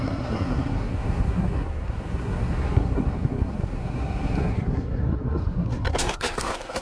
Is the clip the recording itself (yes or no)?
no